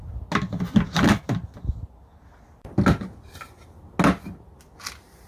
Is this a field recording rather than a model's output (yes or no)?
yes